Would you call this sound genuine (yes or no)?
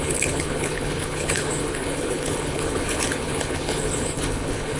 no